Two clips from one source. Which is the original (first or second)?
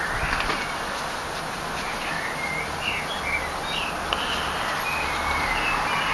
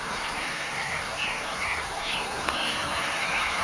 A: first